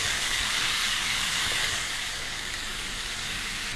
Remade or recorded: remade